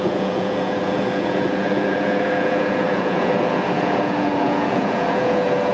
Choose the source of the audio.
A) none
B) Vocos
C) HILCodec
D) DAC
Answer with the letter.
B